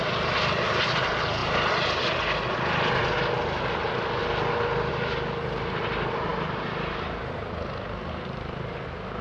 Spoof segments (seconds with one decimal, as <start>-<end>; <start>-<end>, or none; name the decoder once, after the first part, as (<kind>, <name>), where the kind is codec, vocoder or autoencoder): none